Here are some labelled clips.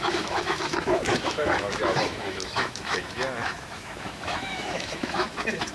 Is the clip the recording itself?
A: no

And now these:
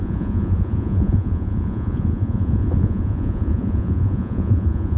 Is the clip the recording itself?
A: no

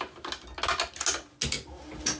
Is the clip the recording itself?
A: yes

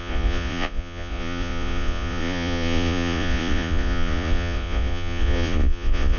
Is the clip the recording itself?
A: no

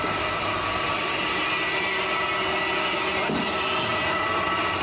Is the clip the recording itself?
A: yes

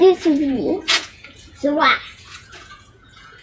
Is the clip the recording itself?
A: no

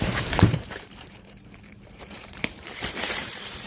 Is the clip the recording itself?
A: no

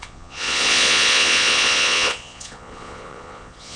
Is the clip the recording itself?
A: no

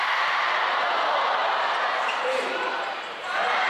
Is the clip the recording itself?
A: no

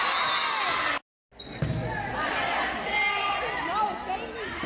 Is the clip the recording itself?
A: yes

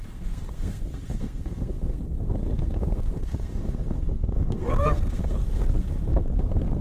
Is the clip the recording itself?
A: no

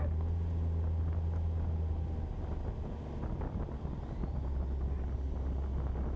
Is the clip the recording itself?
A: yes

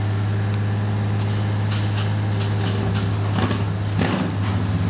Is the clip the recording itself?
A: yes